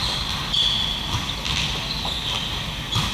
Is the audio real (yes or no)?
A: yes